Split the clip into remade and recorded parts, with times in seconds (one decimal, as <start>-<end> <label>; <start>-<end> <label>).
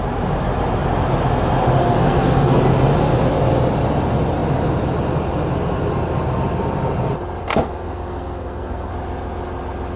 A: 0.0-1.8 recorded; 1.8-2.6 remade; 2.6-7.4 recorded; 7.4-8.9 remade; 8.9-10.0 recorded